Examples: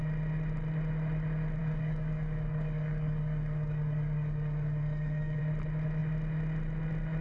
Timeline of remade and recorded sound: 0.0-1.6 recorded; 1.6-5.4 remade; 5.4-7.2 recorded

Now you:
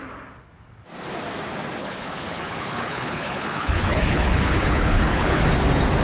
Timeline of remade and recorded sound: 0.0-1.8 recorded; 1.8-5.4 remade; 5.4-6.0 recorded

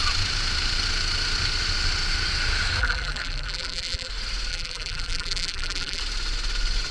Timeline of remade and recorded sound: 0.0-2.8 recorded; 2.8-4.1 remade; 4.1-4.5 recorded; 4.5-6.0 remade; 6.0-6.9 recorded

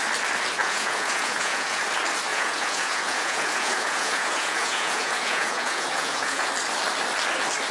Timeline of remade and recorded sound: 0.0-0.6 recorded; 0.6-1.8 remade; 1.8-2.3 recorded; 2.3-6.5 remade; 6.5-7.7 recorded

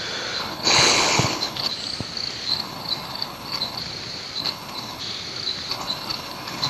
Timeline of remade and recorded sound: 0.0-0.4 recorded; 0.4-1.7 remade; 1.7-2.5 recorded; 2.5-3.8 remade; 3.8-4.4 recorded; 4.4-5.0 remade; 5.0-5.7 recorded; 5.7-6.7 remade